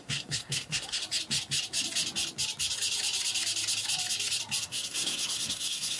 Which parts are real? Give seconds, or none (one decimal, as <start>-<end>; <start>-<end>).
1.0-4.6